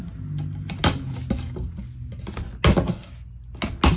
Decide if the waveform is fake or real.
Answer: real